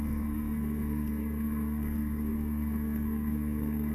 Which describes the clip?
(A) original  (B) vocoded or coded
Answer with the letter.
B